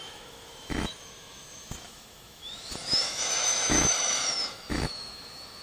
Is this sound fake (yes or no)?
yes